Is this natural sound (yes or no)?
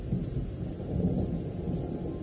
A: yes